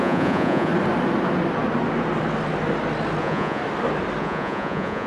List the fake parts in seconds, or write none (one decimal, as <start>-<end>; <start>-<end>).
0.0-0.7; 3.2-3.6; 4.2-5.1